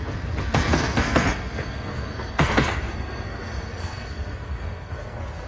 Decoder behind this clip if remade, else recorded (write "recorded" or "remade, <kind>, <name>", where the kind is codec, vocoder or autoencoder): remade, codec, SNAC